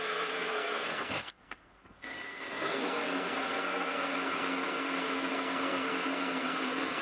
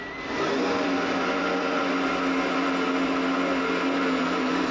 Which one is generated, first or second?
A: first